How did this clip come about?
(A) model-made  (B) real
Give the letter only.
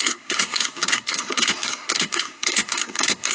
A